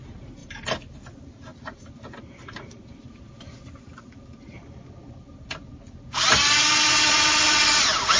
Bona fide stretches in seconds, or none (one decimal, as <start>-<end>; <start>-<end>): 0.0-0.4; 1.0-1.5; 5.7-6.6; 7.7-8.2